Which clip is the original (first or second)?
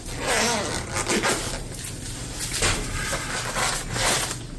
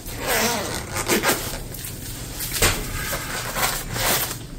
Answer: first